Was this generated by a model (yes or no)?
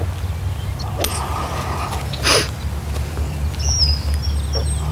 no